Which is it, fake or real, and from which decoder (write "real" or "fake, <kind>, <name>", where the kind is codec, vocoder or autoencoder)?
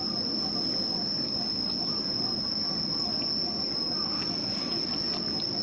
real